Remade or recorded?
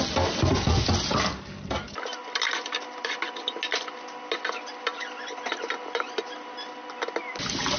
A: recorded